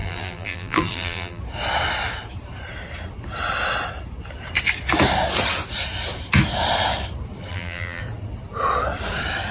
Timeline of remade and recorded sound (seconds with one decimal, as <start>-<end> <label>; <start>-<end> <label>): 0.0-1.4 remade; 1.4-7.5 recorded; 7.5-8.0 remade; 8.0-9.5 recorded